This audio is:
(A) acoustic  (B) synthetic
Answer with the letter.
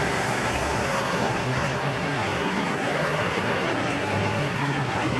B